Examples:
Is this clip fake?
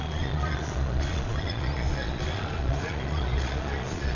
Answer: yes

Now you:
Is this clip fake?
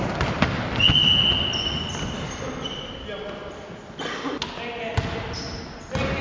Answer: no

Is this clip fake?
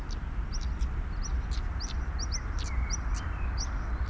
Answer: no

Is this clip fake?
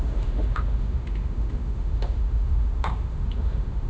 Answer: yes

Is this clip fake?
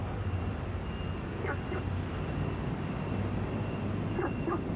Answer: no